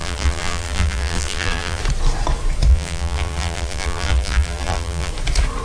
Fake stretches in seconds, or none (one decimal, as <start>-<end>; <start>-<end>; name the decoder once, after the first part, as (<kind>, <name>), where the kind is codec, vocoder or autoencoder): 0.0-1.8 (vocoder, BigVGAN v2); 2.7-5.1